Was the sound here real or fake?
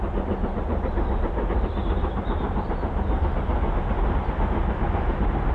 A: real